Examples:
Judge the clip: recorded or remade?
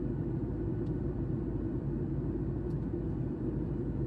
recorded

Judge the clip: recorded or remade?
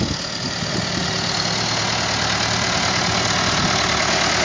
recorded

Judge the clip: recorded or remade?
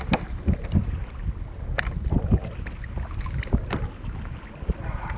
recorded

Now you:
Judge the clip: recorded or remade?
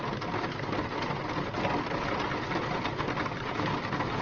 recorded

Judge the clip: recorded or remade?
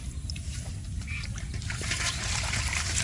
recorded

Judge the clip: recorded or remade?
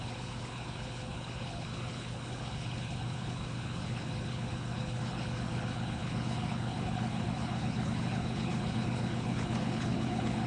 remade